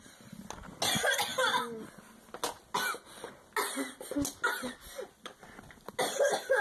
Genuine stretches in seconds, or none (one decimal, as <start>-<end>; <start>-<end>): 0.0-6.6